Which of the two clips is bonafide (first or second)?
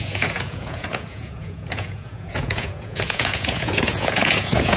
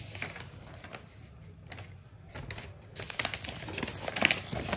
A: second